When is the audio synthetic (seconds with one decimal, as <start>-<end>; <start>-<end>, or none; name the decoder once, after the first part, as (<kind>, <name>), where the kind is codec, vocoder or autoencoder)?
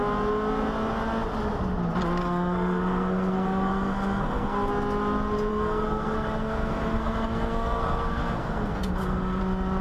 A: 2.2-4.7 (codec, SNAC); 5.5-9.4